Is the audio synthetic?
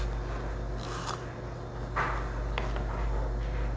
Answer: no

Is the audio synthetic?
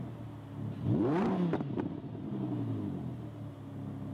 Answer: no